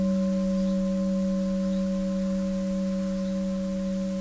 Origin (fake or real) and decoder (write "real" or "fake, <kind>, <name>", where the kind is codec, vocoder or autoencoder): real